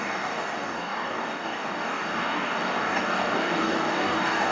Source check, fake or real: fake